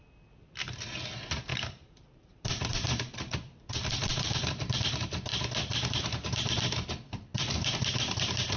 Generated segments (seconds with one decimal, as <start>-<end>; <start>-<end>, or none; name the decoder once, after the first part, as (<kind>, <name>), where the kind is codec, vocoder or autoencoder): 1.5-4.8 (vocoder, BigVGAN v2); 7.3-8.6